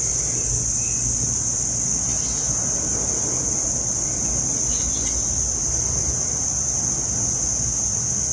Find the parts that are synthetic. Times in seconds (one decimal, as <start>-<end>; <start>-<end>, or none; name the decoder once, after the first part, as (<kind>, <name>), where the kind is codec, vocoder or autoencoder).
none